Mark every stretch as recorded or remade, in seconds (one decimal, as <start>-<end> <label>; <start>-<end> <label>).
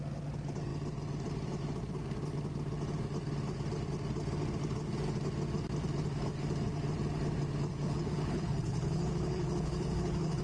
0.0-7.7 recorded; 7.7-10.4 remade